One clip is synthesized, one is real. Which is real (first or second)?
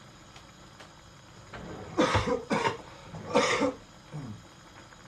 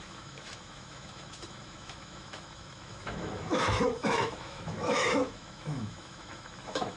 first